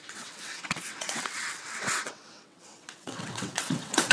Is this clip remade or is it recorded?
remade